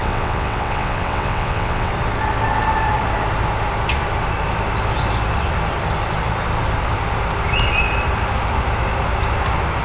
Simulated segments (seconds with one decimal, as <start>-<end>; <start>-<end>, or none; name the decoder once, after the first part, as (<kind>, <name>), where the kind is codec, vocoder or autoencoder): 0.0-1.9 (vocoder, WaveNeXt)